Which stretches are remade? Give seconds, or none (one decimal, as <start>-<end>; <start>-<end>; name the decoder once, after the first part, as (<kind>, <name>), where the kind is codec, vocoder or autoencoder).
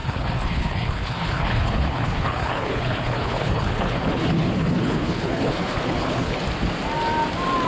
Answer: 0.0-6.4 (codec, HILCodec)